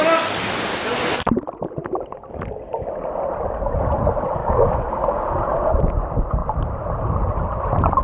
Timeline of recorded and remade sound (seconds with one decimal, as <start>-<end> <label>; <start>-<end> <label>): 0.0-4.4 recorded; 4.4-5.3 remade; 5.3-8.0 recorded

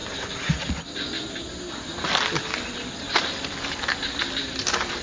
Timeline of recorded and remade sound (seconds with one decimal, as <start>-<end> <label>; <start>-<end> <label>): 0.0-3.0 recorded; 3.0-5.0 remade